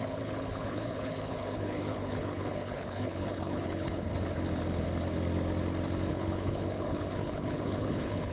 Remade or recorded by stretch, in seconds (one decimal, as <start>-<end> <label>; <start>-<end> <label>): 0.0-4.1 remade; 4.1-6.1 recorded; 6.1-8.3 remade